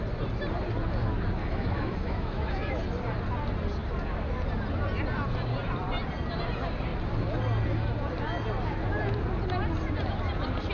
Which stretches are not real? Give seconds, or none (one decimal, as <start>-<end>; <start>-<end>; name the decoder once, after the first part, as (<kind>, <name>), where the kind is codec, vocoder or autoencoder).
1.4-2.8 (autoencoder, DAC-VAE)